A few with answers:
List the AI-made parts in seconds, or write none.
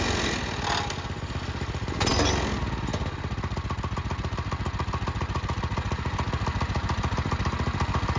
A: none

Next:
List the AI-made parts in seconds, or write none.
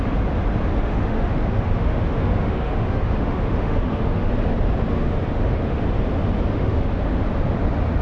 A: 0.7-4.3 (autoencoder, DAC-VAE); 4.9-5.8; 6.5-7.2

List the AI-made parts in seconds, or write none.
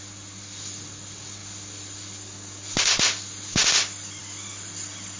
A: none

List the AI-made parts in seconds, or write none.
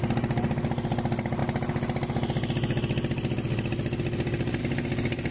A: none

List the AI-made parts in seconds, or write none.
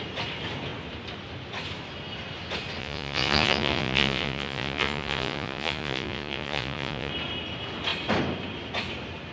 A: 2.8-7.1 (vocoder, Vocos)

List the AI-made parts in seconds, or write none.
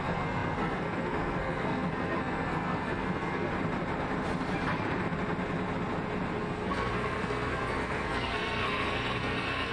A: 0.0-3.5 (codec, SNAC); 6.4-9.7